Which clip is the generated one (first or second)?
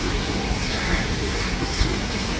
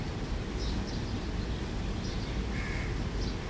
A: first